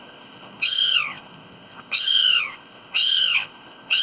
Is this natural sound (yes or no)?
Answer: no